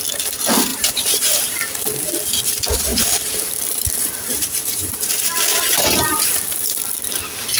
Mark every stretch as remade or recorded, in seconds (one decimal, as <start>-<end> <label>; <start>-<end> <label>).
0.0-0.7 recorded; 0.7-2.0 remade; 2.0-2.9 recorded; 2.9-5.0 remade; 5.0-5.5 recorded; 5.5-6.8 remade; 6.8-7.6 recorded